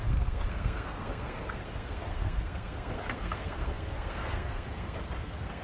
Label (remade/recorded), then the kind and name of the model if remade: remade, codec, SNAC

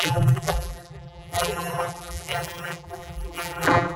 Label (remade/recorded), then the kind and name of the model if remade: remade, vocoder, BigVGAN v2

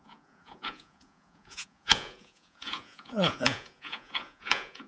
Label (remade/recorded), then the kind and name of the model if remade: remade, vocoder, Vocos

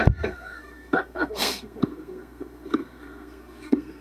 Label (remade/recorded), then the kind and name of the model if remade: remade, codec, SNAC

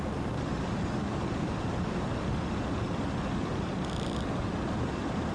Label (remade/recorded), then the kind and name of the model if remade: recorded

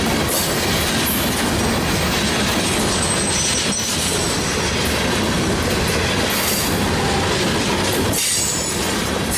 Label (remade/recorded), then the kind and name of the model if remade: recorded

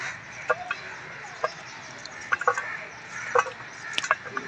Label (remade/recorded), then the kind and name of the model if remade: recorded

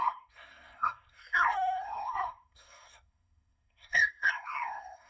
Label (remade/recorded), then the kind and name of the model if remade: remade, codec, SNAC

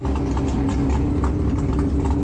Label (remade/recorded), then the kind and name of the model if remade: recorded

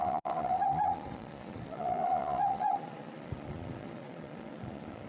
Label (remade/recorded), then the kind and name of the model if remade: remade, vocoder, Vocos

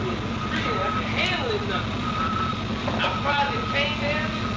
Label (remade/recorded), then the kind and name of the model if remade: recorded